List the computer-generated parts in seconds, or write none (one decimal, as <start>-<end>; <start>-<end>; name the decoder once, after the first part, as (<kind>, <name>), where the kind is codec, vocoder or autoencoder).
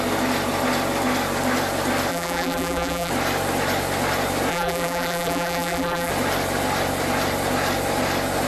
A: 2.1-3.1 (vocoder, BigVGAN v2); 4.5-6.1